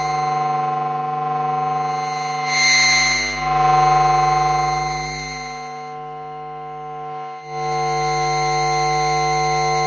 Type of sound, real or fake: real